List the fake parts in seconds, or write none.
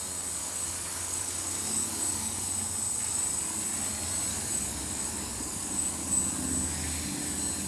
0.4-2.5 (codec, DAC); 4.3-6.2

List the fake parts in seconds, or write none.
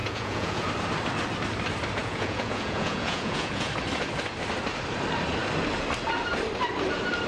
0.0-0.7 (vocoder, Vocos); 2.0-3.7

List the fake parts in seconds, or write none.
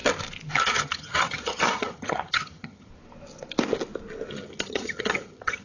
0.6-2.9 (vocoder, HiFi-GAN); 4.3-5.6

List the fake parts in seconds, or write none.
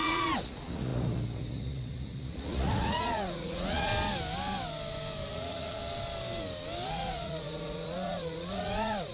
0.0-3.9 (vocoder, Vocos); 5.3-5.8; 6.9-9.1